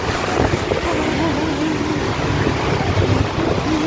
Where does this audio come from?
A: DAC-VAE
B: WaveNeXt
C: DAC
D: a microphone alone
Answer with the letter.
D